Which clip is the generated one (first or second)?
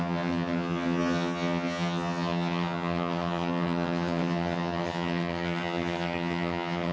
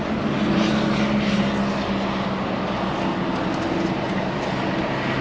first